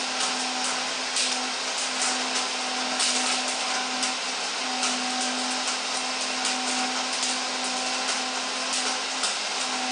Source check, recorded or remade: recorded